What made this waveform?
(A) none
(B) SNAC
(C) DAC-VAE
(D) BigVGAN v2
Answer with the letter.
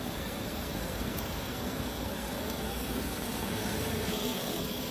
B